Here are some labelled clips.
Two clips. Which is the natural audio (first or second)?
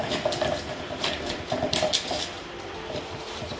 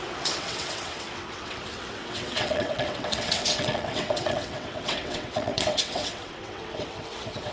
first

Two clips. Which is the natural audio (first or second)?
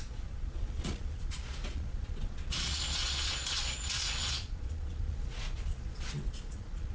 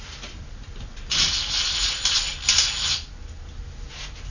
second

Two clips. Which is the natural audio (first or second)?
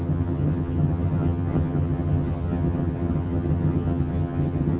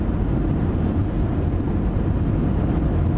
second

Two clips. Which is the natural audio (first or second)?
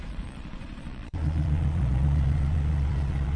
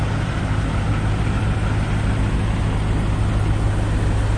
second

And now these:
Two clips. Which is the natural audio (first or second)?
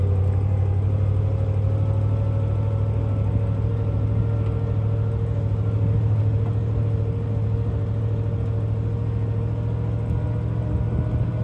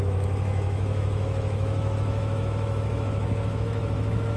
first